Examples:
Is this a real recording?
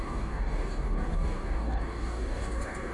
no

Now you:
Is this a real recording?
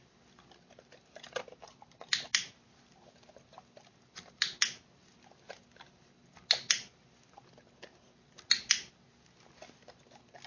yes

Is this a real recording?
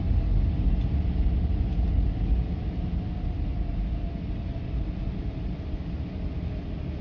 yes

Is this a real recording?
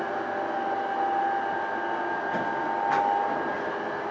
yes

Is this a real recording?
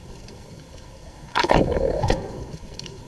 no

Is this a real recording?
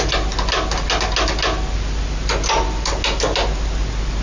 yes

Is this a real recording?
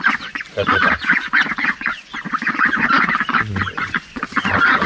no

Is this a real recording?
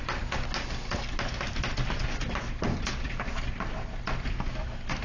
yes